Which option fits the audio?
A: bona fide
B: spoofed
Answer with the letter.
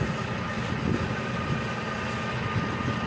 A